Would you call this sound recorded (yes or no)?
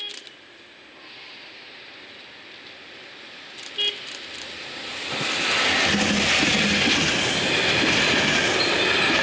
yes